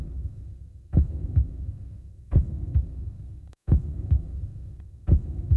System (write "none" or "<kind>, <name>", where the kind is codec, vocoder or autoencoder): codec, SNAC